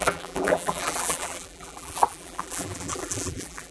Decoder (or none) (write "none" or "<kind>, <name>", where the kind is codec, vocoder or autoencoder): vocoder, BigVGAN v2